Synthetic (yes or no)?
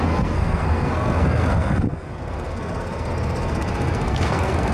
yes